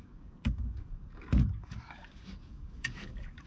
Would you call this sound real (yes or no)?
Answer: no